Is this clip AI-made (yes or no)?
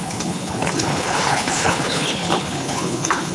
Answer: yes